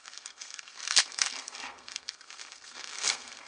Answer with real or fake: fake